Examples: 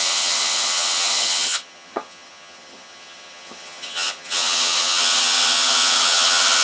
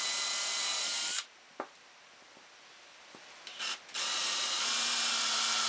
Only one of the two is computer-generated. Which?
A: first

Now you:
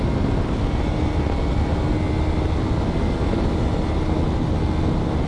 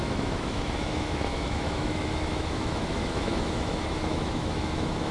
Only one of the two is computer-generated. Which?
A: second